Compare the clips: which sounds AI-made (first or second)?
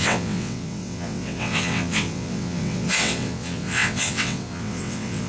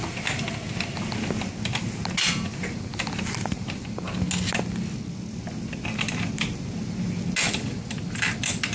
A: first